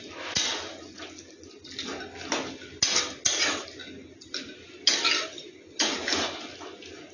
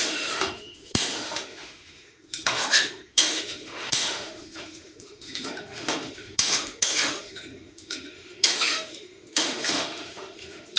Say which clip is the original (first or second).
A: first